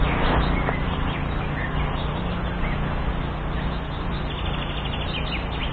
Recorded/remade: recorded